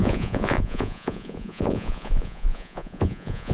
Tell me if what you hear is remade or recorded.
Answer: remade